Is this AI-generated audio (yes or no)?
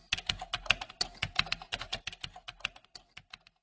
no